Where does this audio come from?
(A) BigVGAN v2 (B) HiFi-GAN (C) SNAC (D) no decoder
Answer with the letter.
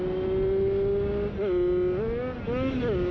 D